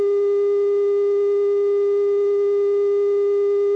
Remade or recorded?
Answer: recorded